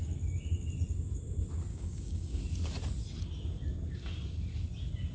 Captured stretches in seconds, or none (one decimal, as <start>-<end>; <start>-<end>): 0.0-1.7; 2.4-5.1

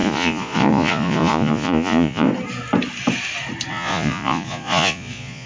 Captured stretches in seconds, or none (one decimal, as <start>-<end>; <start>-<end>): 2.3-3.7

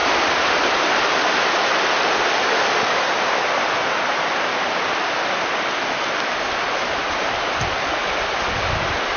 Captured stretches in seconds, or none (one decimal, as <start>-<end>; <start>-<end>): 0.0-9.2